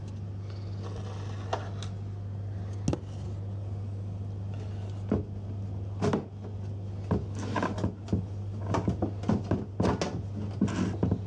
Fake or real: real